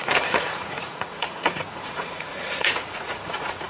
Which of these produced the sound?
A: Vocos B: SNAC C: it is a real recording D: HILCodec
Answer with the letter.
A